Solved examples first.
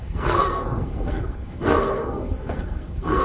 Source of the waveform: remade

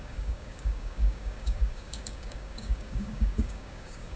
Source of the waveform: remade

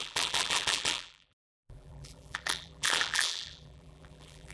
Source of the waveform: remade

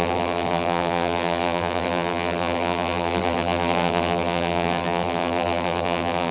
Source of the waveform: remade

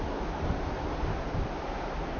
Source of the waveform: recorded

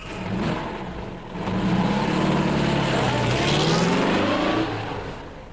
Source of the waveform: recorded